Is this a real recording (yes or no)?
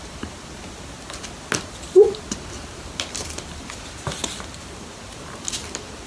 no